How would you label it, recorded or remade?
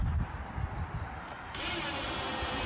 recorded